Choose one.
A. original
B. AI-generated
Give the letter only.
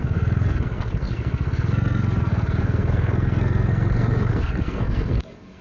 B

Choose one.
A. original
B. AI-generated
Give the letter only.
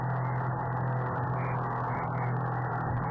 A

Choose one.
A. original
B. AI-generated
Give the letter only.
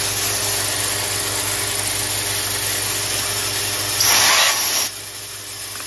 A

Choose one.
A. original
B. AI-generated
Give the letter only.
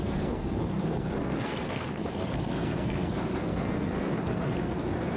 B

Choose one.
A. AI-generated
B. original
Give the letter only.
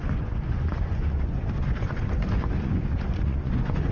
A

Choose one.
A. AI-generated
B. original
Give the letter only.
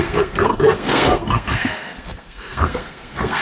A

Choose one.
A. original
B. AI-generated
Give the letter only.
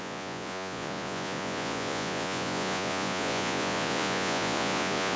B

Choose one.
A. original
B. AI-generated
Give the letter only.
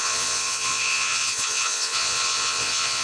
B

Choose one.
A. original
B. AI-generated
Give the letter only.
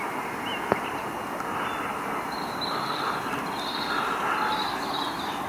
B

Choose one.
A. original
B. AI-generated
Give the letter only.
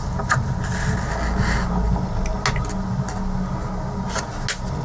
A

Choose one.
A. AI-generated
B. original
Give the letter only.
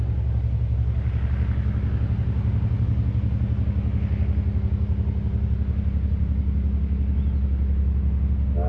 B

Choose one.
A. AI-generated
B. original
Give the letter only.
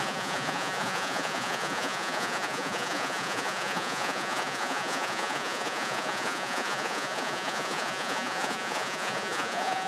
A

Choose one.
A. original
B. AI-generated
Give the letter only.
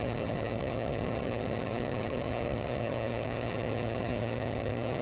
B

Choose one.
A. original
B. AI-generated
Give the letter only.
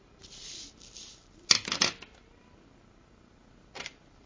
A